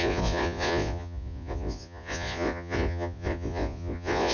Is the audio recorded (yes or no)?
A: no